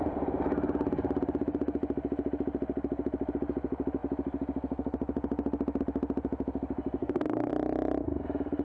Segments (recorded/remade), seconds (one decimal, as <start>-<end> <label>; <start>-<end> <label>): 0.0-7.0 recorded; 7.0-7.5 remade; 7.5-8.6 recorded